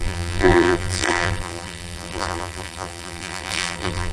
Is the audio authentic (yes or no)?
no